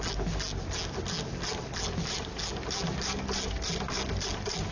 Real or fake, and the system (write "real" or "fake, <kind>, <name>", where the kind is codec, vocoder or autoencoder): real